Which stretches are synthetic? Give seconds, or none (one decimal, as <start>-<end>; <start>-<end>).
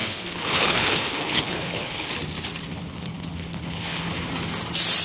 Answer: 0.0-2.1; 2.7-4.3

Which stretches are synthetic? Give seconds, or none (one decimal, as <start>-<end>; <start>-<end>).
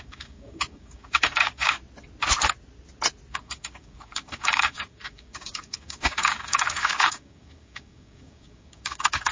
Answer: 0.0-1.8; 3.3-9.3